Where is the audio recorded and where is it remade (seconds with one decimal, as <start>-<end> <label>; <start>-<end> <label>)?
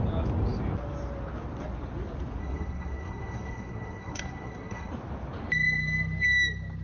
0.0-2.4 recorded; 2.4-4.9 remade; 4.9-6.8 recorded